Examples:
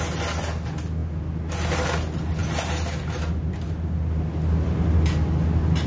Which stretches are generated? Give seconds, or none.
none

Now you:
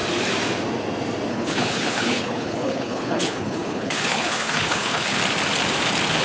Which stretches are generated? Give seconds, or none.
1.3-5.2

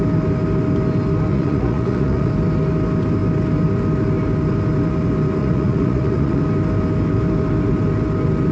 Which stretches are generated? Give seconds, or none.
1.3-2.3; 5.4-6.4

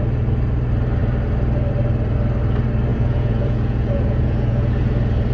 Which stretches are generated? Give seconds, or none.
2.9-4.7

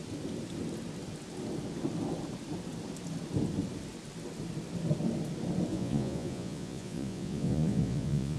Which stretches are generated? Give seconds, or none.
5.7-8.4

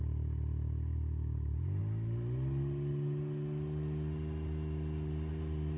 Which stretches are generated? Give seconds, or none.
none

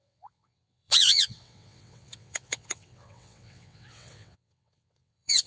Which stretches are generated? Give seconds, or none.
0.0-5.5

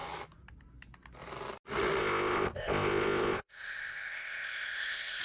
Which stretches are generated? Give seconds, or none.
2.0-5.2